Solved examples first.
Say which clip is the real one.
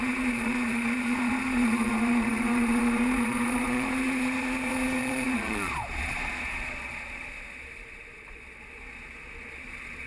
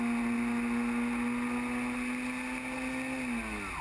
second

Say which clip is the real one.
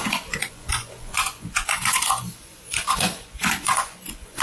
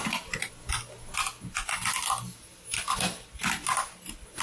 second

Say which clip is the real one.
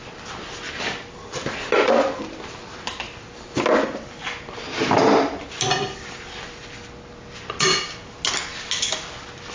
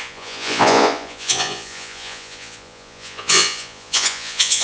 first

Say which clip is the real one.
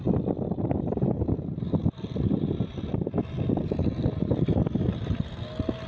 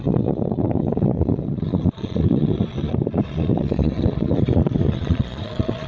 first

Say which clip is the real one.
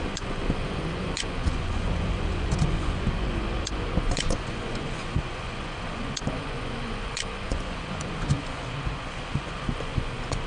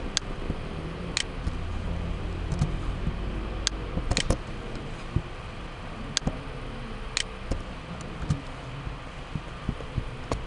second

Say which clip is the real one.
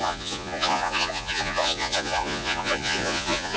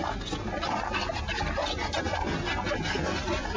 second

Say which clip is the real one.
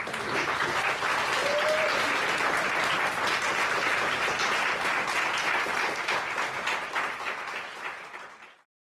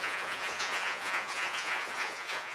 first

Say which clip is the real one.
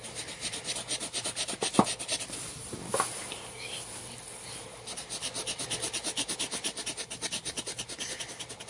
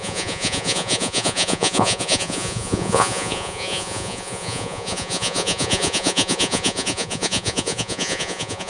first